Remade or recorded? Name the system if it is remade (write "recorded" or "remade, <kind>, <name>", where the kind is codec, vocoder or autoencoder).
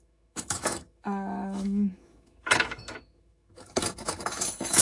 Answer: remade, autoencoder, DAC-VAE